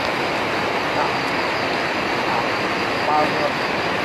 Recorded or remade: recorded